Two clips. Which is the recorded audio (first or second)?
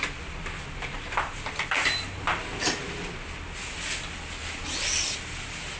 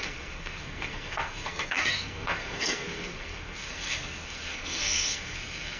first